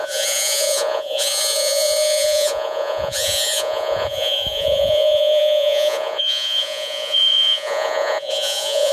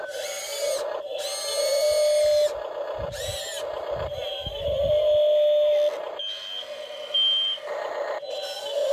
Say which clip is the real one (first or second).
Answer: second